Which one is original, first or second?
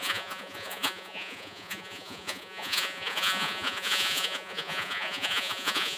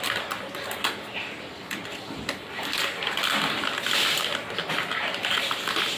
second